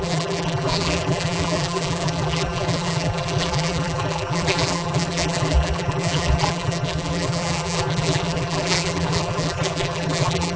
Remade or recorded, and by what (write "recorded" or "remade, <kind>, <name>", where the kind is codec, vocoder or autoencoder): remade, vocoder, BigVGAN v2